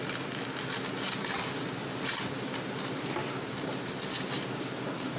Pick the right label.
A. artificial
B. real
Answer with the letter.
B